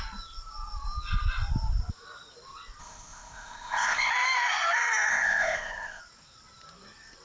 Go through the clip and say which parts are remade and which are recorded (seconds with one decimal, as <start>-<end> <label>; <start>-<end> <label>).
0.0-2.8 recorded; 2.8-4.1 remade; 4.1-5.1 recorded; 5.1-6.0 remade; 6.0-7.2 recorded